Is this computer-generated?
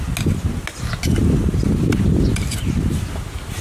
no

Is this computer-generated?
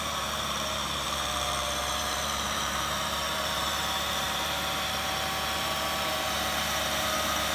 yes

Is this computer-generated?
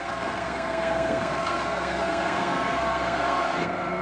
yes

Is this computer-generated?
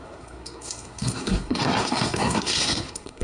yes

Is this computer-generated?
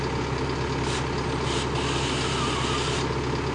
no